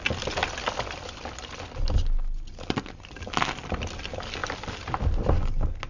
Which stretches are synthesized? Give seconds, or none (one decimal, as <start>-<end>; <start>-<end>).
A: none